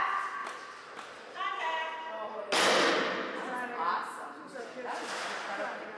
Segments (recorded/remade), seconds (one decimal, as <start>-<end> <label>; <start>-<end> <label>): 0.0-6.0 recorded